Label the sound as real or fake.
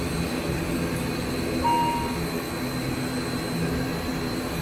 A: real